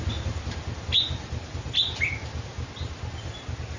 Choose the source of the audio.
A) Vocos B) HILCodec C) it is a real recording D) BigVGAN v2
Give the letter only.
C